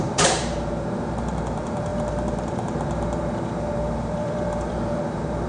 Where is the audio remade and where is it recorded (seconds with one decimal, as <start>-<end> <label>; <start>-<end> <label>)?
0.0-5.5 remade